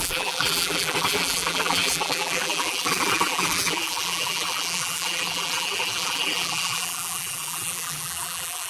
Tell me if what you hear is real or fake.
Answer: fake